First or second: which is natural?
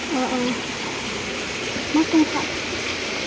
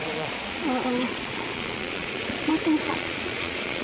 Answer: first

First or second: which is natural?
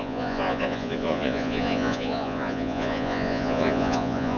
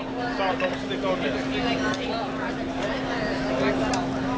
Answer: second